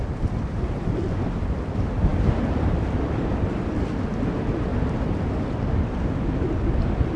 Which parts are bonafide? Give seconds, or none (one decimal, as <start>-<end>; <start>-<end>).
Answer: 0.0-7.2